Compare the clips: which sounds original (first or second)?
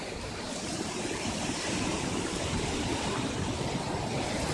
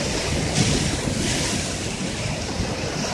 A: second